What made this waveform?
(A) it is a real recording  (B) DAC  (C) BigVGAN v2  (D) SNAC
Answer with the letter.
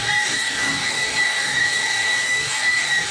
B